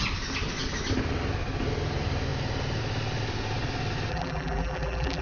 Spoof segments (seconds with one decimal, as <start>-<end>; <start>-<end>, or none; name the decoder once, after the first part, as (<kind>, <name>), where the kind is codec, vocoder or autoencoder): 4.1-5.2 (vocoder, BigVGAN v2)